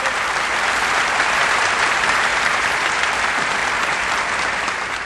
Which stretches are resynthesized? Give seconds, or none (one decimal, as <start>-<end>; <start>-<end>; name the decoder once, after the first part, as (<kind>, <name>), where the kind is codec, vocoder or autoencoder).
0.0-2.3 (vocoder, BigVGAN v2); 3.0-3.6